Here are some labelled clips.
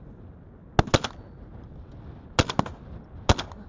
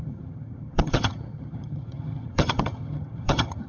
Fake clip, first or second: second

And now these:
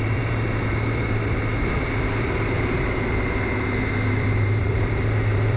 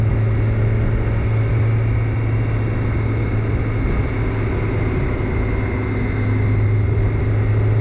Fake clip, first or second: first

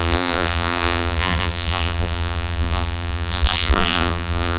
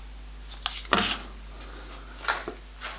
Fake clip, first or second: first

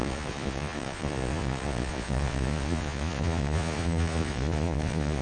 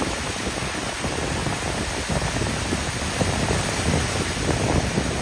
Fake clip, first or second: first